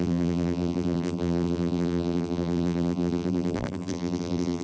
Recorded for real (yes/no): no